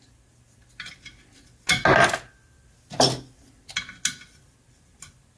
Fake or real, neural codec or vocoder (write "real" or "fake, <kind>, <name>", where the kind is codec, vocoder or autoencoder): real